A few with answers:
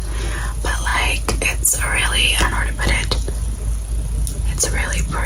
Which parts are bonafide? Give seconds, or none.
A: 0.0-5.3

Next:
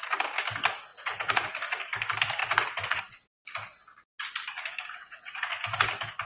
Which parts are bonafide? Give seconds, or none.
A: 0.0-0.9; 1.5-2.4; 3.0-6.2

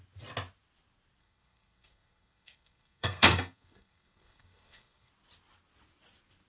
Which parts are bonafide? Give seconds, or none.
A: 0.0-1.2; 5.1-6.5

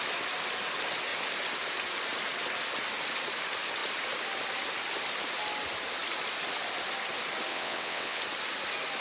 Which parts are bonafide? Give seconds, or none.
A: 0.0-7.5; 8.2-9.0

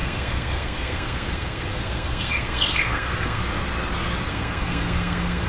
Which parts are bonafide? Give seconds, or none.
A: 3.4-4.3